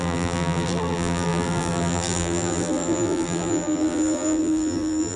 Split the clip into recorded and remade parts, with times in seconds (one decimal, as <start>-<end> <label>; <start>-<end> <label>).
0.0-5.2 remade